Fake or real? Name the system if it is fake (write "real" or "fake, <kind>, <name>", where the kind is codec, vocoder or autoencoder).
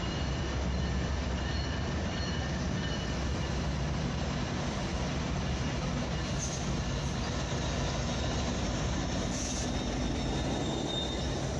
real